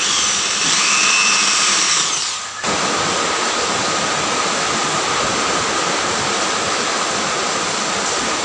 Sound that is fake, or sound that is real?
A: real